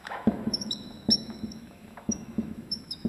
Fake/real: fake